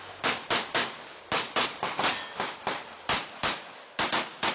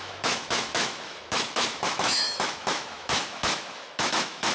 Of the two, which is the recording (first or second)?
first